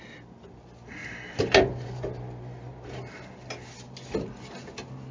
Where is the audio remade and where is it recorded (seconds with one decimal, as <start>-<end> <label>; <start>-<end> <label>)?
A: 0.0-5.1 recorded